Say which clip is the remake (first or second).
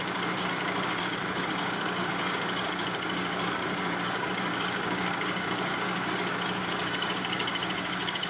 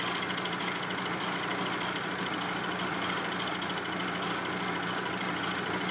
first